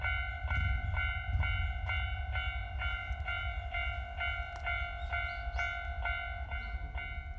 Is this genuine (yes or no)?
yes